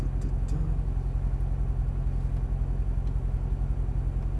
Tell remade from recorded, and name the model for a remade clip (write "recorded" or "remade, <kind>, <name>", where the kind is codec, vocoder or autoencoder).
recorded